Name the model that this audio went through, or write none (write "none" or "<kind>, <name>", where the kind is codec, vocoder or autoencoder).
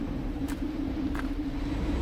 vocoder, BigVGAN v2